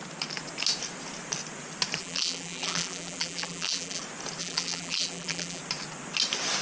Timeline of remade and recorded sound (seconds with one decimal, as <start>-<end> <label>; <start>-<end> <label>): 0.0-2.0 recorded; 2.0-4.0 remade; 4.0-4.4 recorded; 4.4-5.6 remade; 5.6-6.6 recorded